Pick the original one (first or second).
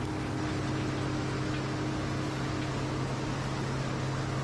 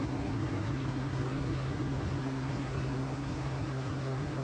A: first